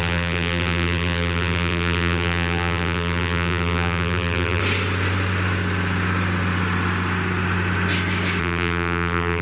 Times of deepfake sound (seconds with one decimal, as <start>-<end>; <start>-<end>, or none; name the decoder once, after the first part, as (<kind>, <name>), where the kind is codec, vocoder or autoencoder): 0.0-4.6 (vocoder, BigVGAN v2); 8.4-9.4